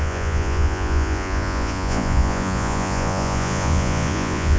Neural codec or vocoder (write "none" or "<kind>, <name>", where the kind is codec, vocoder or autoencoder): vocoder, Vocos